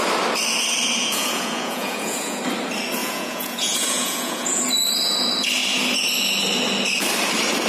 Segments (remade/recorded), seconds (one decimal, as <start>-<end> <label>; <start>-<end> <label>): 0.0-1.0 recorded; 1.0-2.4 remade; 2.4-3.0 recorded; 3.0-4.6 remade; 4.6-7.7 recorded